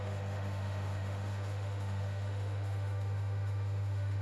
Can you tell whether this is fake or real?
fake